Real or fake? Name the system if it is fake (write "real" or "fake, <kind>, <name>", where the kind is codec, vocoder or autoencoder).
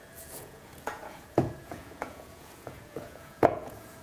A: fake, vocoder, Vocos